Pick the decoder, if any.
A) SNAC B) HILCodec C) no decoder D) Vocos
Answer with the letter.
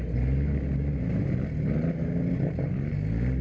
C